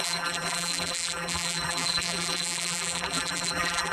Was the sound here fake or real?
fake